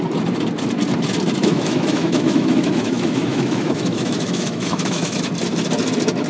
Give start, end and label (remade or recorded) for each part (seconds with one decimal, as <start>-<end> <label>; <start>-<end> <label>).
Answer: 0.0-1.4 recorded; 1.4-5.2 remade; 5.2-6.3 recorded